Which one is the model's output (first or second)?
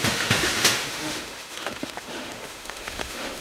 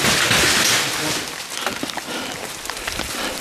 first